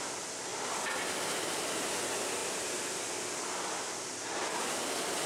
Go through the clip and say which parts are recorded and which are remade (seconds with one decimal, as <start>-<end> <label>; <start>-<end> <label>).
0.0-5.3 recorded